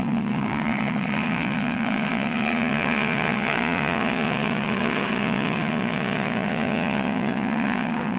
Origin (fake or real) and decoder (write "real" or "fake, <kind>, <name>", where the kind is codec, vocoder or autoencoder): fake, vocoder, Vocos